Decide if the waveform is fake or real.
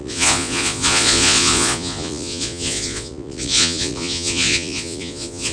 fake